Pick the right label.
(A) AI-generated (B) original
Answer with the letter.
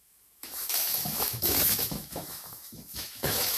A